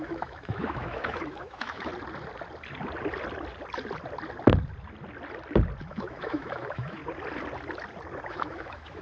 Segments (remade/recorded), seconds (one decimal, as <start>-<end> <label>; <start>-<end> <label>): 0.0-1.9 remade; 1.9-5.8 recorded; 5.8-7.0 remade; 7.0-8.3 recorded; 8.3-9.0 remade